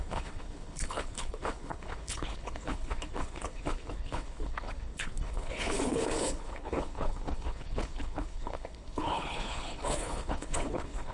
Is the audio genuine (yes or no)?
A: no